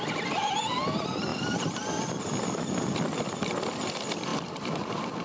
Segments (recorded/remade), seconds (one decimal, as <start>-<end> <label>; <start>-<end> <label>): 0.0-1.3 recorded; 1.3-3.5 remade; 3.5-5.2 recorded